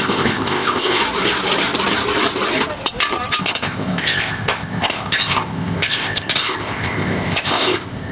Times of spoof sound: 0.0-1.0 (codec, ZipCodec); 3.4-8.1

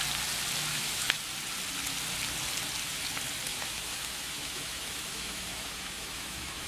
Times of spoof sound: 0.7-1.2 (autoencoder, DAC-VAE); 3.5-6.7

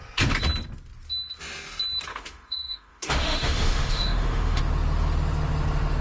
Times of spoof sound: 2.1-4.6 (autoencoder, DAC-VAE)

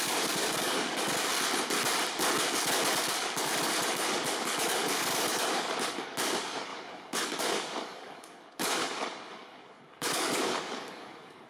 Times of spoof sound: 0.0-1.3 (codec, DAC); 3.0-11.5

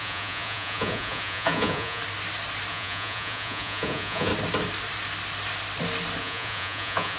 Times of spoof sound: 0.0-2.0 (vocoder, Vocos); 2.7-4.3; 6.2-7.2

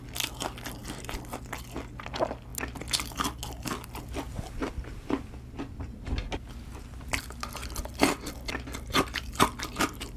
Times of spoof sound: none

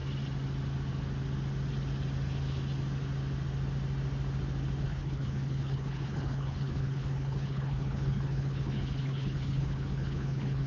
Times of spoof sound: 4.8-10.7 (codec, HILCodec)

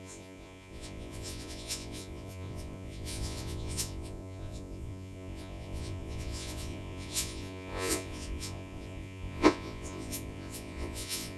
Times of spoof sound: 0.0-11.4 (vocoder, Vocos)